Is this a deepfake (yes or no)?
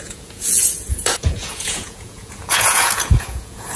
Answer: yes